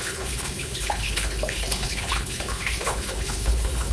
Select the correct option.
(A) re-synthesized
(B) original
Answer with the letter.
A